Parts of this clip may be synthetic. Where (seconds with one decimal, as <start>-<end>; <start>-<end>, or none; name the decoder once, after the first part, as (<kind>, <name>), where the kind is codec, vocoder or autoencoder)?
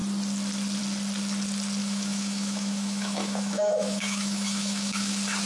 1.8-5.1 (autoencoder, DAC-VAE)